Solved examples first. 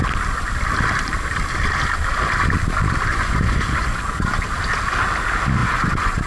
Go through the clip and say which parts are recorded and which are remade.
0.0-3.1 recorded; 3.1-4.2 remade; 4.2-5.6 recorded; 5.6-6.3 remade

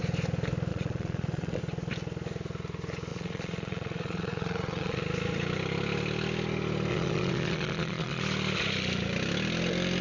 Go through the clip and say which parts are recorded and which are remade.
0.0-0.7 recorded; 0.7-1.6 remade; 1.6-3.1 recorded; 3.1-5.0 remade; 5.0-6.9 recorded; 6.9-8.2 remade; 8.2-10.0 recorded

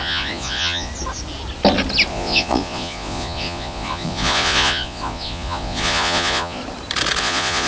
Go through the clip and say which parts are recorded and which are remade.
0.0-0.9 remade; 0.9-2.1 recorded; 2.1-6.6 remade; 6.6-7.2 recorded; 7.2-7.7 remade

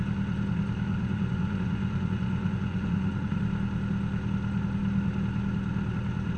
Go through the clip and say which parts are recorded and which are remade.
0.0-0.9 recorded; 0.9-3.4 remade; 3.4-6.4 recorded

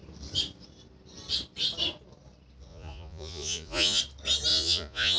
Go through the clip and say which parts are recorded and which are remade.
0.0-2.7 recorded; 2.7-4.0 remade; 4.0-4.5 recorded; 4.5-5.2 remade

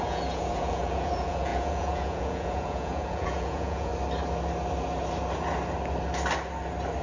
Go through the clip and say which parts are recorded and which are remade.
0.0-3.9 remade; 3.9-7.0 recorded

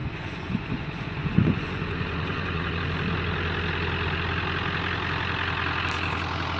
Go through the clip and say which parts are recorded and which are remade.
0.0-2.8 remade; 2.8-6.6 recorded

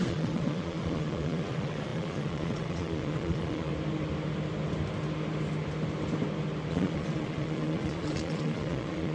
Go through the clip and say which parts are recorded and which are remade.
0.0-3.7 remade; 3.7-6.7 recorded; 6.7-9.1 remade